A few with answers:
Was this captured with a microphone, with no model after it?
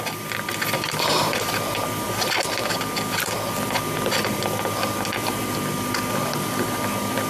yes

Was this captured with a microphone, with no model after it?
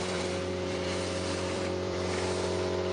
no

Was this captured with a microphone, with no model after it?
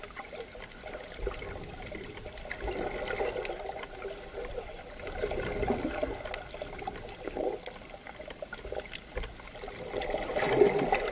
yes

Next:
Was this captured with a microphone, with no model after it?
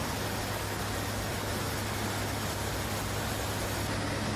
yes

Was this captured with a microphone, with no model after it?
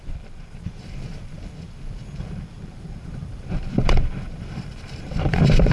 no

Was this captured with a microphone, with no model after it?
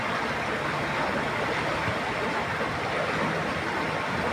yes